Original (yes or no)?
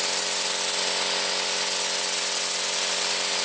yes